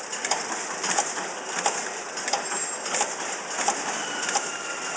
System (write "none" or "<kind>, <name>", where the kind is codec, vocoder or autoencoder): none